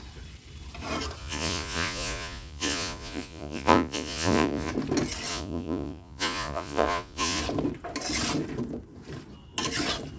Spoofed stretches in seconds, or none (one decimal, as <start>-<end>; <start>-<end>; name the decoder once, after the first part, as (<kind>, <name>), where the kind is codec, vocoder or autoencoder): 1.2-4.7 (vocoder, Vocos); 5.3-7.4